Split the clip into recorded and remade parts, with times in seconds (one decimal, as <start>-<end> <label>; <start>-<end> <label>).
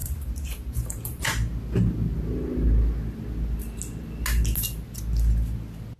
0.0-1.2 remade; 1.2-6.0 recorded